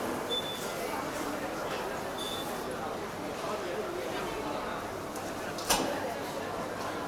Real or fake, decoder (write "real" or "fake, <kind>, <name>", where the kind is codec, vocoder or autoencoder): real